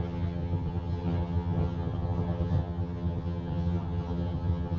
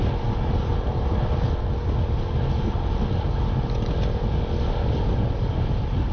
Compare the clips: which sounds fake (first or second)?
first